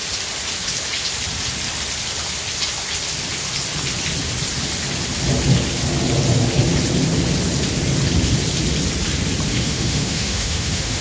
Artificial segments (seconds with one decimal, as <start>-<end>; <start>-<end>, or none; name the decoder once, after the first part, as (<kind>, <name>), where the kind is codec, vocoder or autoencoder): 9.5-11.0 (autoencoder, DAC-VAE)